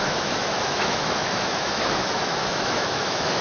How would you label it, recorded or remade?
remade